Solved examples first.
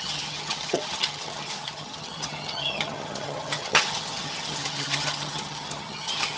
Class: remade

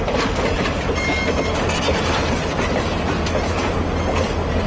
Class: recorded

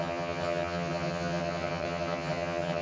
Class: remade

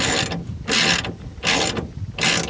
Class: recorded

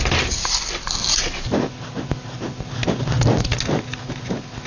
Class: recorded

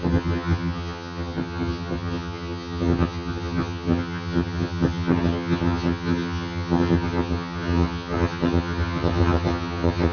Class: remade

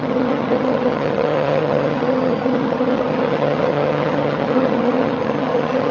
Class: remade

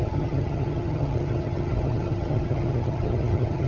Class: remade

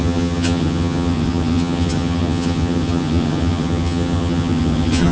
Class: remade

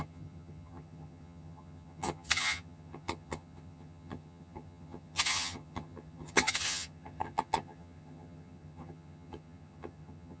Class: remade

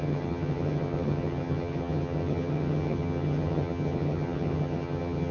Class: remade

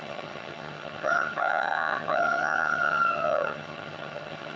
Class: remade